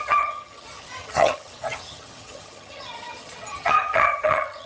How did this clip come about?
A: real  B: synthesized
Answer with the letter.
B